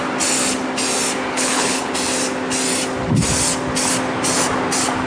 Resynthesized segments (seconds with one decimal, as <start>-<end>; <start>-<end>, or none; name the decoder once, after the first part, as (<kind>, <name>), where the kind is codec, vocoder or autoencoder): 1.3-1.9 (codec, HILCodec)